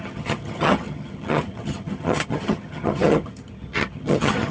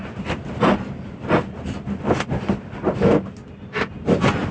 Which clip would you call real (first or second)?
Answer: second